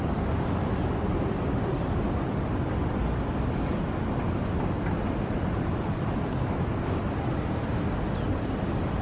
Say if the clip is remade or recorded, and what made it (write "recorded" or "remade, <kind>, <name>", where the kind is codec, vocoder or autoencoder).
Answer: recorded